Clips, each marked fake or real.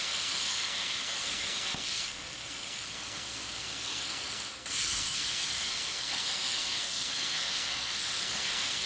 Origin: fake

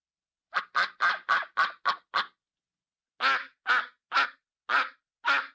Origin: real